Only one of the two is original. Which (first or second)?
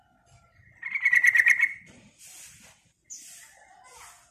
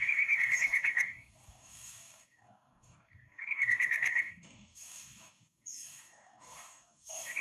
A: first